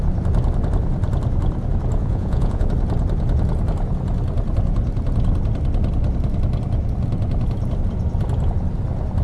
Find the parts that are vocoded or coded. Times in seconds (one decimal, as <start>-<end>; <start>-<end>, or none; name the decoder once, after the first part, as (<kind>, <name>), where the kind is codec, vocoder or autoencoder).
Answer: 2.0-2.7 (vocoder, Vocos)